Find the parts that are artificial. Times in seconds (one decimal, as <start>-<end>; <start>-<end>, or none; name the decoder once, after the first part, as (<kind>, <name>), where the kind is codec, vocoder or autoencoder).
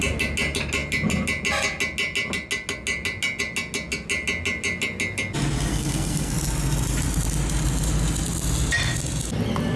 5.7-6.3 (codec, SNAC)